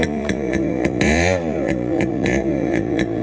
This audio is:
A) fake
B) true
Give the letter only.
A